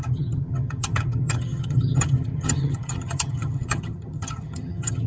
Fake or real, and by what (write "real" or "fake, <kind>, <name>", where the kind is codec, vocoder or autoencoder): fake, vocoder, HiFi-GAN